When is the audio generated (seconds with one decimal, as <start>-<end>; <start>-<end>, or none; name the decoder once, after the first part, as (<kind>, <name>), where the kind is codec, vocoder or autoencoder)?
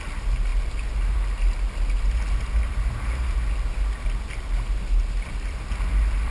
none